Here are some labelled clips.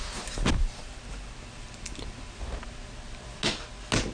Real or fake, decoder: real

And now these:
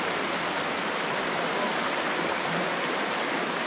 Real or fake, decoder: real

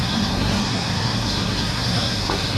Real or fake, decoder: fake, codec, SNAC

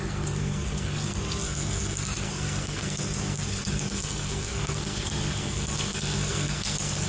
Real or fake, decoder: fake, codec, SNAC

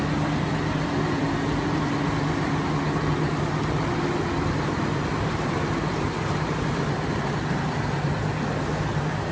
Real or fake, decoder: real